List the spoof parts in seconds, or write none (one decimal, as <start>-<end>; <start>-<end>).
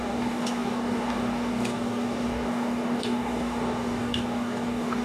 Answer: 0.0-5.0